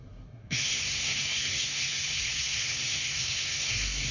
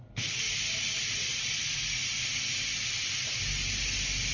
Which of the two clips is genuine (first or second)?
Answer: second